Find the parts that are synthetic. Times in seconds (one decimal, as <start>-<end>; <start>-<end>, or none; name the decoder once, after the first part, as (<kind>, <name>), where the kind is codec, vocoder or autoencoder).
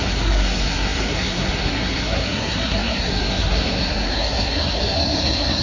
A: 0.0-5.6 (codec, SNAC)